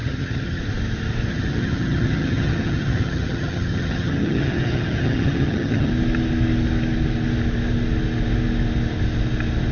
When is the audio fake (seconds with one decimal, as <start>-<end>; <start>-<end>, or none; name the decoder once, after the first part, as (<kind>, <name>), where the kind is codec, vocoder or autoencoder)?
0.0-0.6 (vocoder, HiFi-GAN); 1.3-5.9